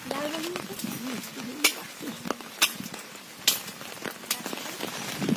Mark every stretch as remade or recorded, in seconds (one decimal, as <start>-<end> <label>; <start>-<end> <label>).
0.0-5.4 recorded